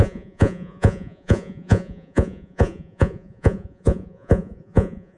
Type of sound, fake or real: fake